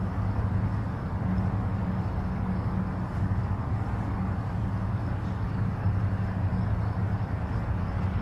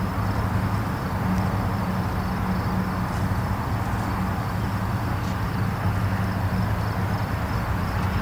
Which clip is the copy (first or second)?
first